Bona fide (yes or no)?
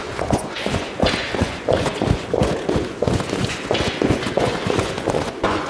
no